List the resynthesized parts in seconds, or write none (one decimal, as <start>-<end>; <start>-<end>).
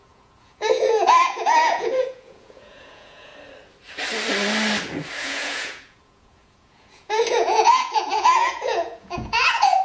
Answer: 0.0-3.3; 5.2-9.8